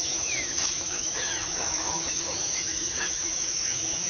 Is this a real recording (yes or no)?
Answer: no